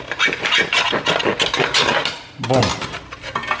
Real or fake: real